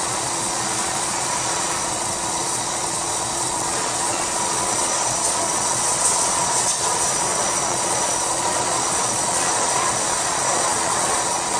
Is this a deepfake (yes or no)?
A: yes